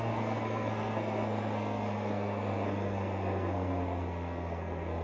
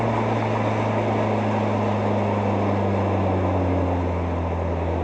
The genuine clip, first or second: second